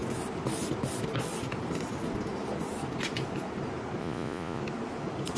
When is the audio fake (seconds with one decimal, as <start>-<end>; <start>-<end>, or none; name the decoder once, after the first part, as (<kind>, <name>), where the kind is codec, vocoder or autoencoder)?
4.0-4.6 (vocoder, Vocos)